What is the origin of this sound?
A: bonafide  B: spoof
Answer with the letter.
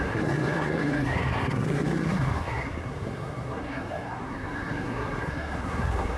B